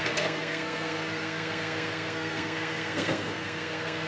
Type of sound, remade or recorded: remade